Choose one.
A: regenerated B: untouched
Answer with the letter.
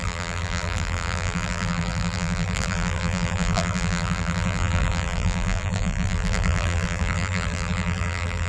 A